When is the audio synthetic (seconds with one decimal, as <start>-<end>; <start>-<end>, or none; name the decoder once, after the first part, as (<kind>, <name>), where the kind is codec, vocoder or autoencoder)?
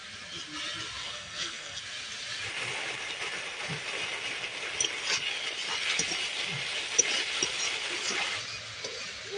1.0-1.8 (codec, SNAC)